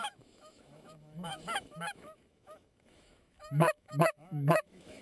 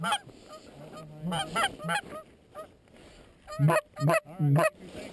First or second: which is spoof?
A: first